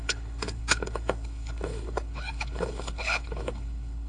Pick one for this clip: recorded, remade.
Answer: remade